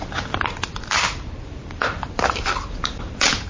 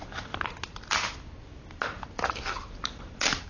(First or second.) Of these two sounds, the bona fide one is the second